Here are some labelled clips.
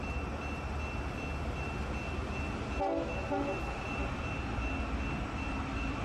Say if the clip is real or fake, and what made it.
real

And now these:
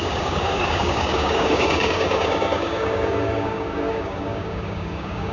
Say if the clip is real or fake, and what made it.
fake, codec, DAC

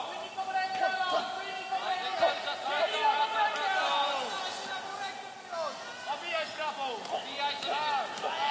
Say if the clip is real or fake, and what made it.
real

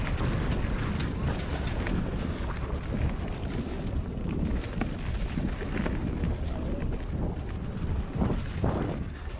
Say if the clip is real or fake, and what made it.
real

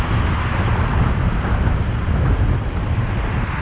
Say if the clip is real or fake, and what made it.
fake, vocoder, BigVGAN v2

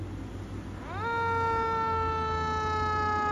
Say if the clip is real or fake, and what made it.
real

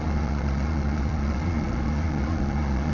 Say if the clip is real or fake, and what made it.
fake, vocoder, Vocos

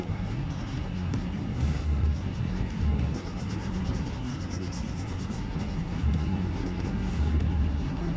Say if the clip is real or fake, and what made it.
fake, codec, SNAC